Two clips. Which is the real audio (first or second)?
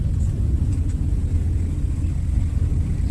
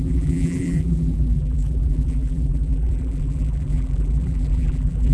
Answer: first